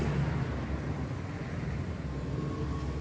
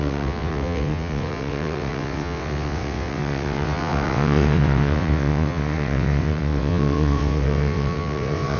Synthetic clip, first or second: second